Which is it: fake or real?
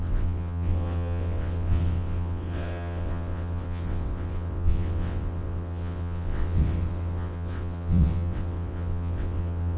fake